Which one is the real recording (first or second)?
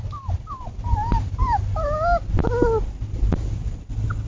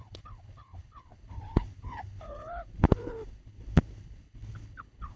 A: first